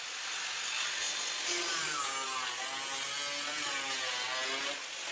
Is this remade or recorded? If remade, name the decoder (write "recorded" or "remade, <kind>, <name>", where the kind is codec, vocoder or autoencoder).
recorded